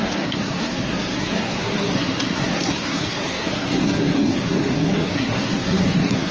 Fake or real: fake